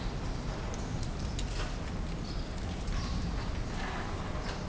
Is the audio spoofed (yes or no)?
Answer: no